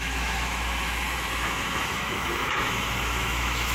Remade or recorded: remade